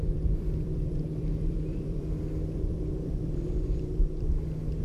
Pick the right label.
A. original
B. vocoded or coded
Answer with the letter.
B